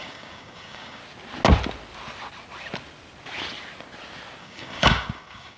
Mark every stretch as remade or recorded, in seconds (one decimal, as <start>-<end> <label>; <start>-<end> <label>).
0.0-1.0 remade; 1.0-4.4 recorded; 4.4-5.6 remade